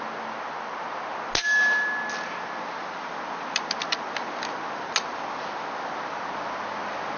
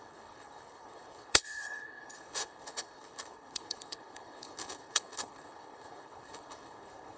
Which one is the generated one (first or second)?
second